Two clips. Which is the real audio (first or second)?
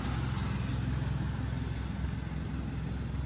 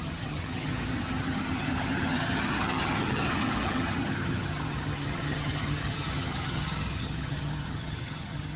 first